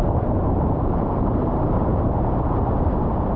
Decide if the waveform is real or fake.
fake